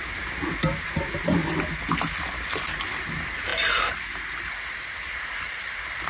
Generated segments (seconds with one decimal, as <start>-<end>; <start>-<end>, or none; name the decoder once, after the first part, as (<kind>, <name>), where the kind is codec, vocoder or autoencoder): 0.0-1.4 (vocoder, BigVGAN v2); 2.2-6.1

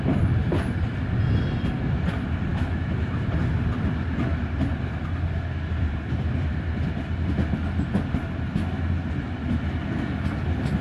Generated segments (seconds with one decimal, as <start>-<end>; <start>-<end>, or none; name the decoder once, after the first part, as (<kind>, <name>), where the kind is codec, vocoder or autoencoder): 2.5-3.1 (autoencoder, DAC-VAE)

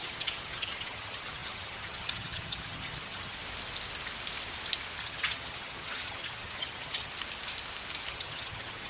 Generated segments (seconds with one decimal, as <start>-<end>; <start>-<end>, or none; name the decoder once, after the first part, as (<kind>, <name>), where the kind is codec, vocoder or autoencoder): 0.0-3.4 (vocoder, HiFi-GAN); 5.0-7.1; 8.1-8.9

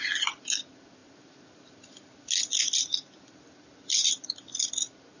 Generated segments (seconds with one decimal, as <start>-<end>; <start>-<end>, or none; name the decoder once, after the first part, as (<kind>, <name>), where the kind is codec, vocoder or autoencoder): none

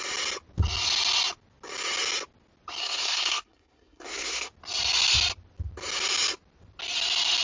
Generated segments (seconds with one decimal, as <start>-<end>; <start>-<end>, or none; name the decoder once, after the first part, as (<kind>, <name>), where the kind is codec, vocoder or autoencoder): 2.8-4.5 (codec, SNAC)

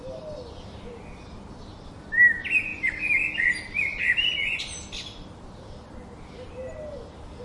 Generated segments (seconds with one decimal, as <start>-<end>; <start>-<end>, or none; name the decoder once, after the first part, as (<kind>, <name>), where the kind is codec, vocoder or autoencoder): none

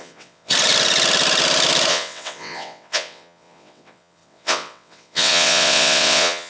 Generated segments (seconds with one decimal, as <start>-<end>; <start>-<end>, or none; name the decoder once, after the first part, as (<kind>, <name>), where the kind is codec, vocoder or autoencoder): 0.0-0.5 (vocoder, WaveNeXt); 1.9-6.5

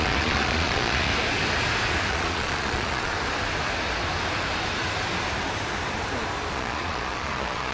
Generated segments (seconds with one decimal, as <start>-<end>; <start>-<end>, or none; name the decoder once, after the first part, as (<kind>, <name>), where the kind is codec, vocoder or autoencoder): 0.0-1.1 (vocoder, Vocos); 2.1-3.1; 6.5-7.7